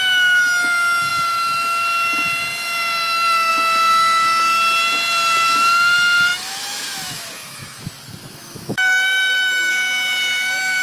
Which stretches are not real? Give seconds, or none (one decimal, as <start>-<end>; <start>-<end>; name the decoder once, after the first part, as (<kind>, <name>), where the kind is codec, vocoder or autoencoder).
6.3-7.8 (autoencoder, DAC-VAE); 8.4-9.7